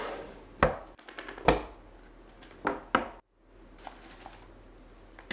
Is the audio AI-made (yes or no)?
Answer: no